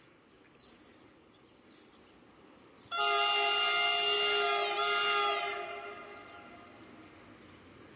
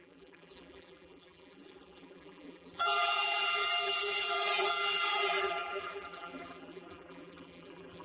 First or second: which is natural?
first